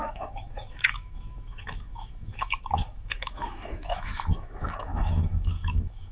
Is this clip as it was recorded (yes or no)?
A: no